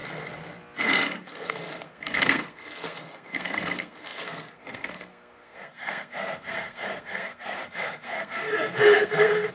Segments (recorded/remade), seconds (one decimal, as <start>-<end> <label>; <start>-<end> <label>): 0.0-0.8 recorded; 0.8-9.5 remade